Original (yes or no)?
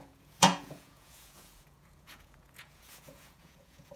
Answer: no